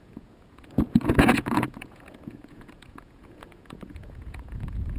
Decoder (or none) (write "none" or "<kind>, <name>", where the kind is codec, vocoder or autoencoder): vocoder, Vocos